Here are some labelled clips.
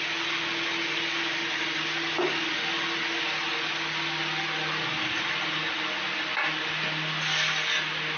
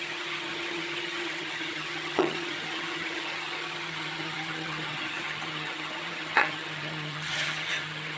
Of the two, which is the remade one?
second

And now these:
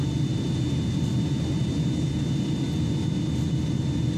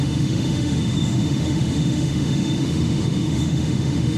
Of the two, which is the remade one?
second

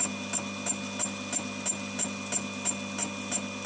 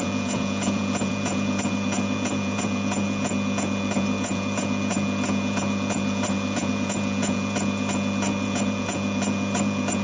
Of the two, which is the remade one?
second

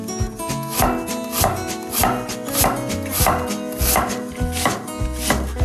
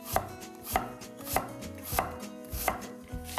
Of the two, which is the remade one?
second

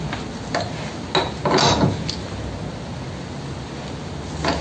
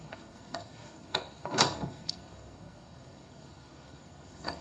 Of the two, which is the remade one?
second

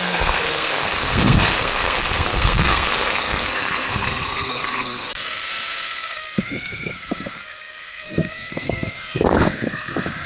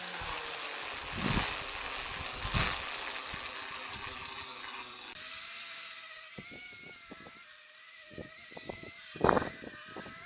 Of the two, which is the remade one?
first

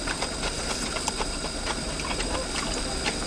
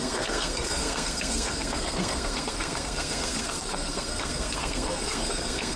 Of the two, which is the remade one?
second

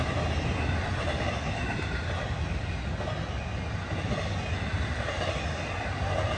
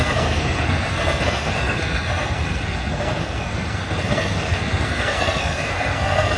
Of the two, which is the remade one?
second